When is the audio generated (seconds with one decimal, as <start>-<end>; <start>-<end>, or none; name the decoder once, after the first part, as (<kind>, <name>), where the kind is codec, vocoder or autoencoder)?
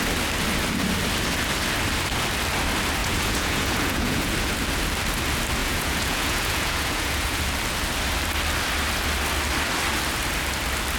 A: 3.0-4.3 (vocoder, Vocos); 5.6-7.4